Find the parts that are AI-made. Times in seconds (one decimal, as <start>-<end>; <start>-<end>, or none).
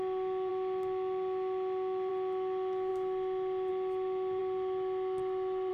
none